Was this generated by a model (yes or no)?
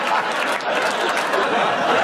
no